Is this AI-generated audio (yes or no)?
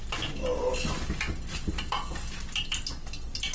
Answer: no